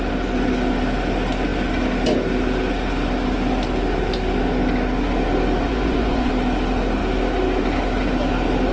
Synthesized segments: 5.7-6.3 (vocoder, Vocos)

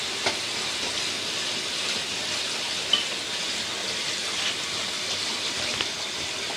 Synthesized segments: none